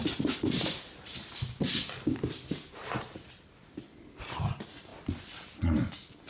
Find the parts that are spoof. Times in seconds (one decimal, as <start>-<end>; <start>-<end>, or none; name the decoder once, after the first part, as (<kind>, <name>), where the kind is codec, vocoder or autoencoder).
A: none

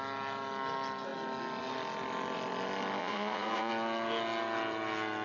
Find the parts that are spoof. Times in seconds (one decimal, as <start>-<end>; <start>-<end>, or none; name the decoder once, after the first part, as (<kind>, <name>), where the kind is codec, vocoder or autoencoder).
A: 3.0-3.7 (vocoder, Vocos)

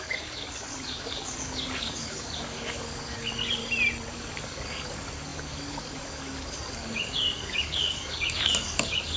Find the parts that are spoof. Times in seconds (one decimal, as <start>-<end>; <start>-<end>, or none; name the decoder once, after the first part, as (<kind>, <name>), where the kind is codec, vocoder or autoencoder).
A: 0.0-3.6 (codec, DAC); 4.1-9.2

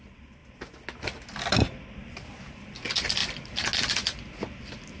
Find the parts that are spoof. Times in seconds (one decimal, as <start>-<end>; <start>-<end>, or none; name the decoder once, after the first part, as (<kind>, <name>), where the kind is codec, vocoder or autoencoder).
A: none